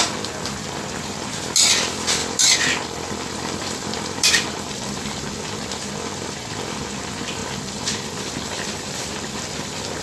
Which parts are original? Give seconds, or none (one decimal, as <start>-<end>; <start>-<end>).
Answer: 0.0-2.2; 5.3-7.4; 9.1-10.0